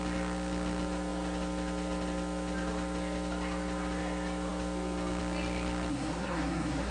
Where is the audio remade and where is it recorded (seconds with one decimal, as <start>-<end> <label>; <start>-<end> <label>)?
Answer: 0.0-5.9 recorded; 5.9-6.9 remade